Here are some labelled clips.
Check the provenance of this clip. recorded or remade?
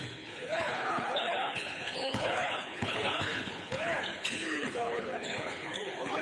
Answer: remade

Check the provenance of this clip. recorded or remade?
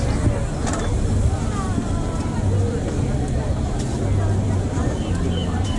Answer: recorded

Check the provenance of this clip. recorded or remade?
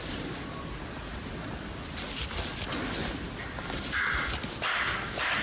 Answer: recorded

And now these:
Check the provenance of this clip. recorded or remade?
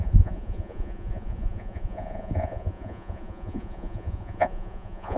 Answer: remade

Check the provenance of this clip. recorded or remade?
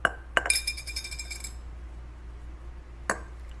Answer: recorded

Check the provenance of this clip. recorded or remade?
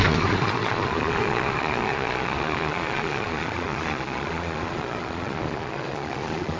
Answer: remade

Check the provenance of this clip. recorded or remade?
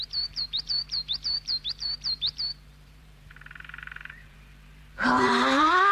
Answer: remade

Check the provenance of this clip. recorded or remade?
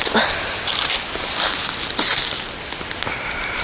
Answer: recorded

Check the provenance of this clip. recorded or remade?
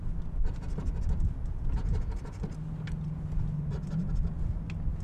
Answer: recorded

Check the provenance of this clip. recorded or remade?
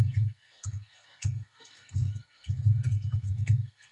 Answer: remade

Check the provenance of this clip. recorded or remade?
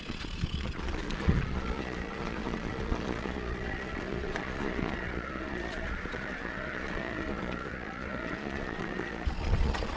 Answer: remade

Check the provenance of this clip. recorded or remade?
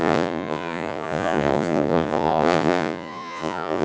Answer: remade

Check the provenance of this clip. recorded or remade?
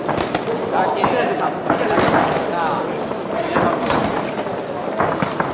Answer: recorded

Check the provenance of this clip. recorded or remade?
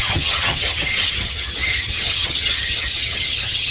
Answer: remade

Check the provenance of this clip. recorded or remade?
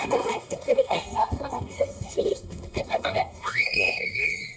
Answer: remade